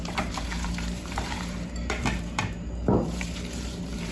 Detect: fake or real fake